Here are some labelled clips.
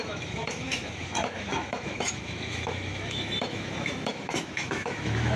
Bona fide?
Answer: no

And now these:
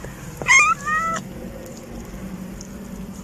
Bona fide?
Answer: yes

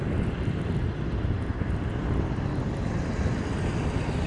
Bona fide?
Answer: yes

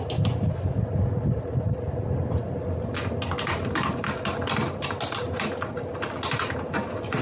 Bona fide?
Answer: yes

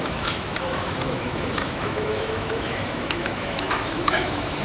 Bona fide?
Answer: no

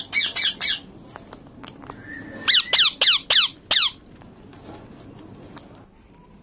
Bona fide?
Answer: yes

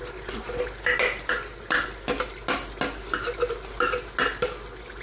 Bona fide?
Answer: yes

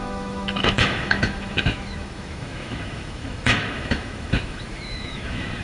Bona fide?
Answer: no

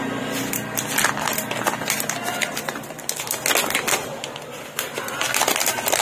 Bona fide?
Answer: yes